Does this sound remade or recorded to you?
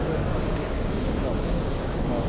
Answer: remade